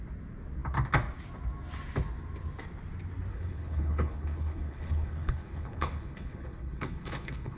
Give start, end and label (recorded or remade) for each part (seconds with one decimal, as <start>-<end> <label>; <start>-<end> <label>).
0.0-3.3 recorded; 3.3-7.6 remade